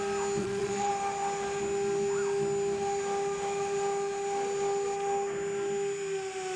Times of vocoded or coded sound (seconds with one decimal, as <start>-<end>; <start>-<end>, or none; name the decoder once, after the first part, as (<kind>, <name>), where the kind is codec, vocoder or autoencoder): 0.4-0.9 (vocoder, Vocos)